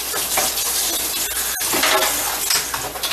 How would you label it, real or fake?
real